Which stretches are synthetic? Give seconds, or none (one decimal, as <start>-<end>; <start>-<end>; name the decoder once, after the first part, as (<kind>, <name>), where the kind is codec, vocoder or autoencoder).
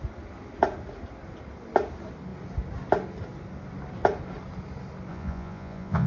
5.1-6.1 (vocoder, Vocos)